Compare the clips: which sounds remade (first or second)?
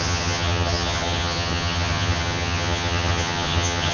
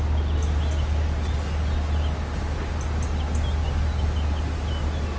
first